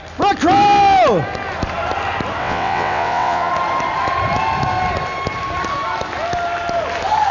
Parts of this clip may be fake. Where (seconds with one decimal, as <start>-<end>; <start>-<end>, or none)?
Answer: 2.4-3.5